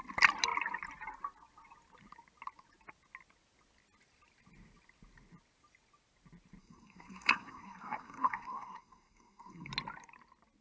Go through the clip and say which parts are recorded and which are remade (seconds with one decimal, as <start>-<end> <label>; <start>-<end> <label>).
0.0-6.6 recorded; 6.6-9.7 remade; 9.7-10.6 recorded